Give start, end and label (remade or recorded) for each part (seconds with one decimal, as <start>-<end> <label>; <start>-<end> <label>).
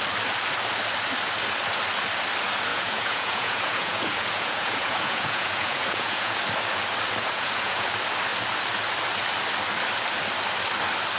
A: 0.0-2.7 recorded; 2.7-6.4 remade; 6.4-7.2 recorded; 7.2-7.9 remade; 7.9-11.2 recorded